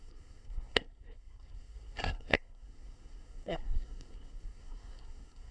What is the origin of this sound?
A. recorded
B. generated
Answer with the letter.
B